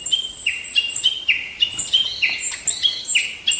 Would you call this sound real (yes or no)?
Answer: yes